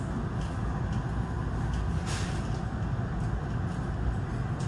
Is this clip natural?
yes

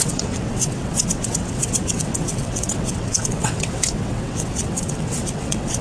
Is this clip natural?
no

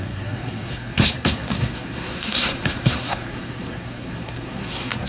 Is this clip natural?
no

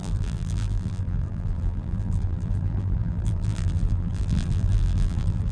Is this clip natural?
no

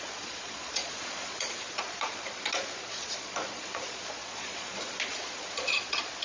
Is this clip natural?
no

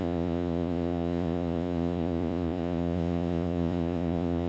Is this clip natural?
no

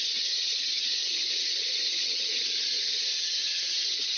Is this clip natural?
no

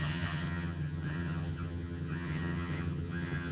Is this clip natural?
no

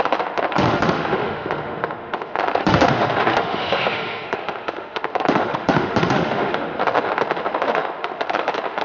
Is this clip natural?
no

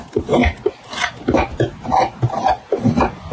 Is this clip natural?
yes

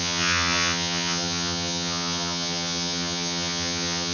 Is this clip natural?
no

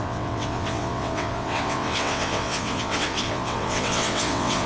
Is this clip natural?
no